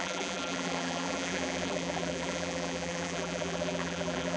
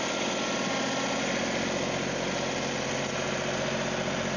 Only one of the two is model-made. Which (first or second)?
first